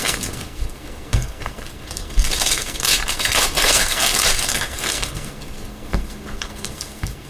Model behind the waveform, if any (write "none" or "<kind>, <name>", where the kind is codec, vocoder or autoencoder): codec, SNAC